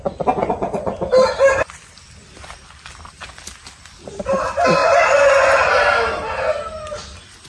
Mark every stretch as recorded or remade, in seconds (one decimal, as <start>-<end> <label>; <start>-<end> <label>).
0.0-0.4 recorded; 0.4-1.1 remade; 1.1-4.8 recorded; 4.8-5.7 remade; 5.7-7.5 recorded